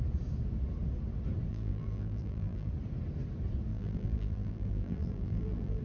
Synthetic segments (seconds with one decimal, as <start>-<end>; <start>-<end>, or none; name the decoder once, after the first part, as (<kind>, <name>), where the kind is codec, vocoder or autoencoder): 1.5-2.7 (vocoder, BigVGAN v2); 3.7-5.8